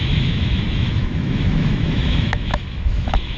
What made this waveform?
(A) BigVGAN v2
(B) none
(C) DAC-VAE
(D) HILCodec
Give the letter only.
C